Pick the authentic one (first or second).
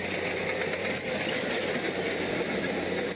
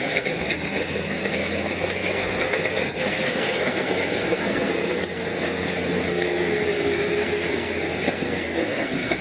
first